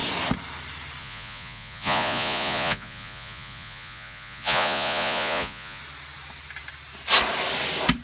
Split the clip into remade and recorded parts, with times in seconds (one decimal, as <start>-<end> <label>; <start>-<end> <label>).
0.0-1.0 recorded; 1.0-5.8 remade; 5.8-8.0 recorded